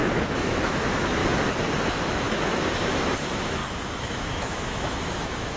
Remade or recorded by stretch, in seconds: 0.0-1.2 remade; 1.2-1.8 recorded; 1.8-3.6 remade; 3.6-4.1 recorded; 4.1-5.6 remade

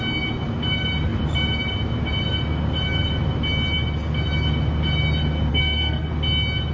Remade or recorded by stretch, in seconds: 0.0-5.5 recorded; 5.5-6.1 remade; 6.1-6.7 recorded

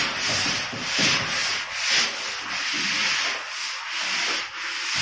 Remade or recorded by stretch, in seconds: 0.0-1.4 remade; 1.4-4.4 recorded; 4.4-5.0 remade